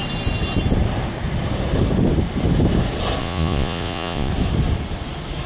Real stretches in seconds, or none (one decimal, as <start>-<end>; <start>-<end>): 0.0-3.2; 4.3-5.5

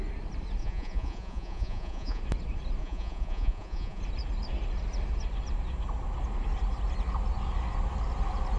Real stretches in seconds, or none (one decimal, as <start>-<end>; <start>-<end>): 0.0-0.6; 2.2-2.8; 4.0-8.6

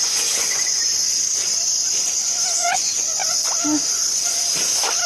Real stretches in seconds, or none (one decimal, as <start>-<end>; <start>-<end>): 1.0-2.1; 3.2-5.1

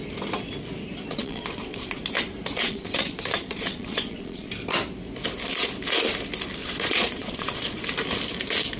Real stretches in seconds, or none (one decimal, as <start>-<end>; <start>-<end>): 0.0-1.1; 2.0-2.6; 4.5-6.6; 7.8-8.8

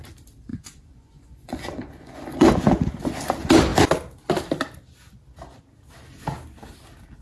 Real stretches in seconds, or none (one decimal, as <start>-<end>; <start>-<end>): 0.0-0.5; 2.5-7.2

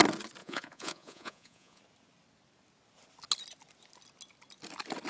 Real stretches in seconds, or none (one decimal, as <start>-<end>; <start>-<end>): 0.0-0.4; 1.8-5.1

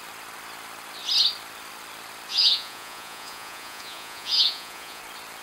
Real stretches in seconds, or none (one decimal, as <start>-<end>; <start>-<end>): 0.0-2.3; 5.0-5.4

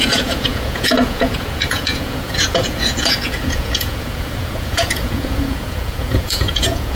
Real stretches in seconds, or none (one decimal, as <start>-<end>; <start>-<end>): none